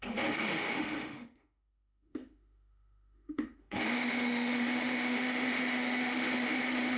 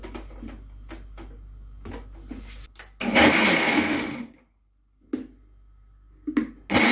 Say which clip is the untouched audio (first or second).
second